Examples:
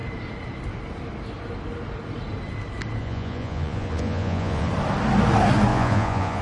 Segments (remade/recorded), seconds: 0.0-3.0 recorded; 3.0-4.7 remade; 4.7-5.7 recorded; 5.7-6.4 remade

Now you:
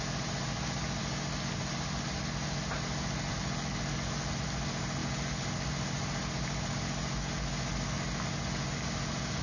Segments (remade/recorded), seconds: 0.0-9.4 recorded

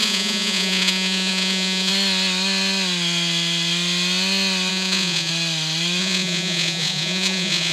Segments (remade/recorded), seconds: 0.0-1.9 remade; 1.9-4.7 recorded; 4.7-5.3 remade; 5.3-6.0 recorded; 6.0-7.7 remade

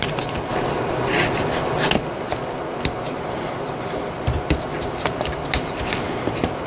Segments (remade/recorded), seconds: 0.0-6.7 recorded

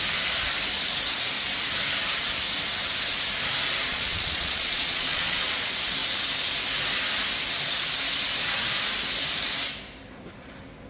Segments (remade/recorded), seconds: 0.0-3.9 recorded; 3.9-5.6 remade; 5.6-10.9 recorded